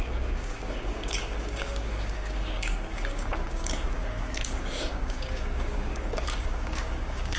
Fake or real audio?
fake